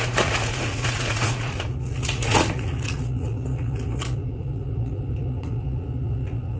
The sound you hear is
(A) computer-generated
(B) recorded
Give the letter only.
A